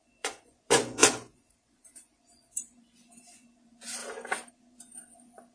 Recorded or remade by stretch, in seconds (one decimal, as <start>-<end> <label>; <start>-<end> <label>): 0.0-4.0 remade; 4.0-4.5 recorded; 4.5-5.5 remade